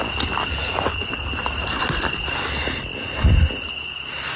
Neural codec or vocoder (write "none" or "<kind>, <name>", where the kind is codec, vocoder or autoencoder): none